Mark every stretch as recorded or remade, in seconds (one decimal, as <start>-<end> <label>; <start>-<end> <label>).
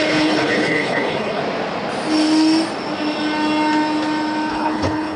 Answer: 0.0-1.4 remade; 1.4-4.5 recorded; 4.5-5.2 remade